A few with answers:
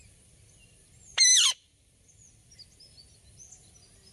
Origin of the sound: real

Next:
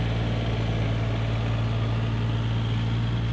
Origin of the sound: real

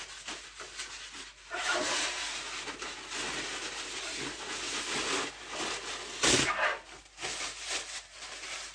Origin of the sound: real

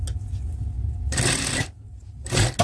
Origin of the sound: real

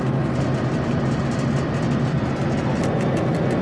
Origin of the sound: real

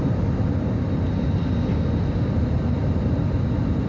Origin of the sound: real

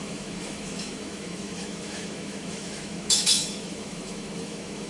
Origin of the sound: fake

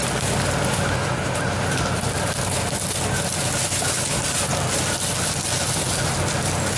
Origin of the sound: real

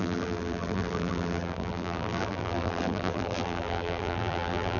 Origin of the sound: fake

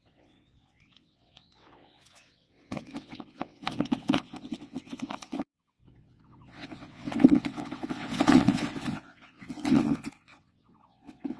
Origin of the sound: fake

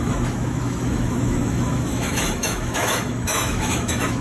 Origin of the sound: fake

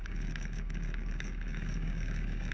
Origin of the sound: fake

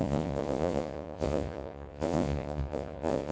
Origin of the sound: fake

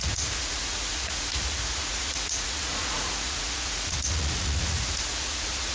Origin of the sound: fake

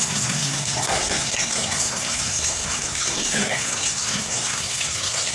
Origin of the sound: fake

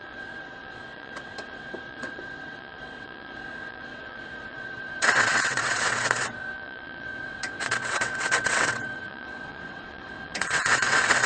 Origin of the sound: fake